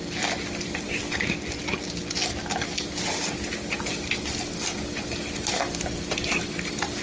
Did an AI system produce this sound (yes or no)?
no